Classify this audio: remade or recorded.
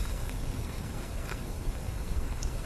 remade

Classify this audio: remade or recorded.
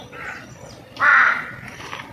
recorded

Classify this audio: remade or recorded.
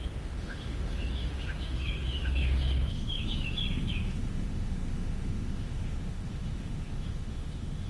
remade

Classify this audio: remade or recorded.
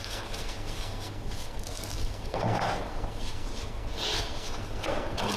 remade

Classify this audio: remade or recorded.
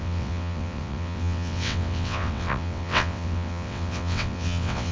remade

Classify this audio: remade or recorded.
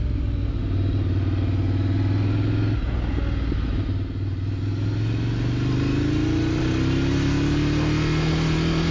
recorded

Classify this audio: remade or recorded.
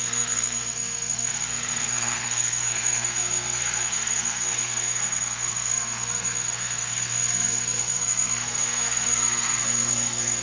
remade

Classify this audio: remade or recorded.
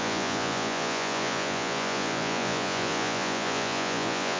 remade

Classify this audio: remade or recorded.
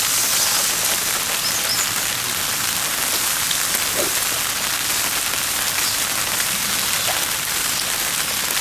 recorded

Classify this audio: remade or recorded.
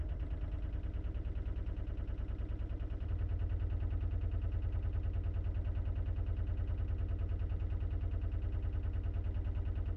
recorded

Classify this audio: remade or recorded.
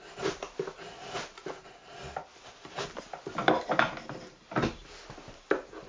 recorded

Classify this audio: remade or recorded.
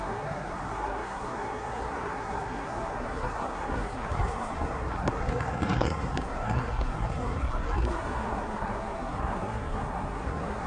remade